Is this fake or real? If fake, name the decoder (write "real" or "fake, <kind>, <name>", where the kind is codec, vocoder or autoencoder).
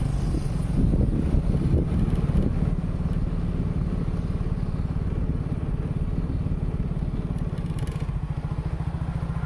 real